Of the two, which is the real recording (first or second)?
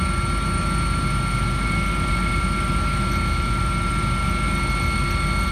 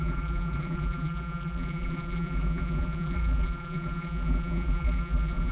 first